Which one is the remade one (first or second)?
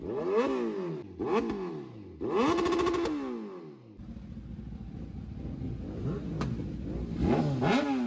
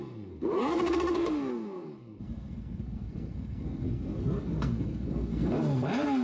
second